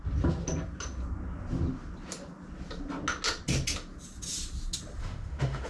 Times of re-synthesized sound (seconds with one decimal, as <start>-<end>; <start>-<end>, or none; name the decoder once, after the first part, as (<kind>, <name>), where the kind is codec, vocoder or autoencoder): 5.0-5.7 (autoencoder, DAC-VAE)

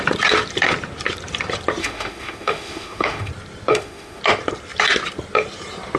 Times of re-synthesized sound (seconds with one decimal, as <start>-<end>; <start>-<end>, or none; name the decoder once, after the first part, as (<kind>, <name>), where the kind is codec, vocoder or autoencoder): 1.8-3.3 (autoencoder, DAC-VAE); 3.7-4.2

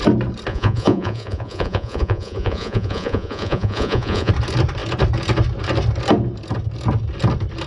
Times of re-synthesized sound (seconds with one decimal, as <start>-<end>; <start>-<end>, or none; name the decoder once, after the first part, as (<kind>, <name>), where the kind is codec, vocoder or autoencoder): 0.5-4.3 (vocoder, Vocos)